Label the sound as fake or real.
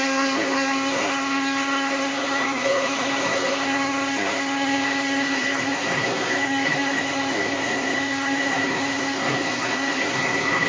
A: fake